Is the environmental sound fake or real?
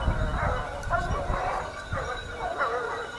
real